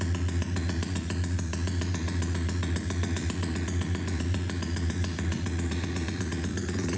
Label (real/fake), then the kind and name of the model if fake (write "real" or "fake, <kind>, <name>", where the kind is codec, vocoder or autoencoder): fake, vocoder, Vocos